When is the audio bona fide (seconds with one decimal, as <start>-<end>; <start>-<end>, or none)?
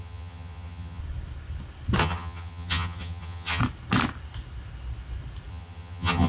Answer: 1.0-2.0; 3.6-5.5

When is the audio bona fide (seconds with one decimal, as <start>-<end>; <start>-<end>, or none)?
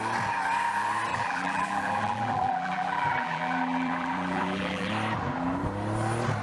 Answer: 0.0-1.1; 4.9-6.4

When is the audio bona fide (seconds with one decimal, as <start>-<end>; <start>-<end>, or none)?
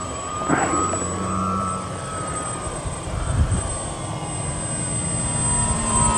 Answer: 3.7-6.2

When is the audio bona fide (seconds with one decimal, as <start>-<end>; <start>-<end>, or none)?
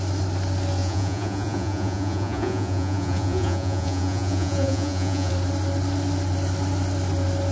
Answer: 0.0-0.8; 5.3-7.5